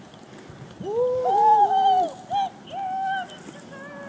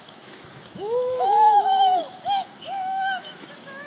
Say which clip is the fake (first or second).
second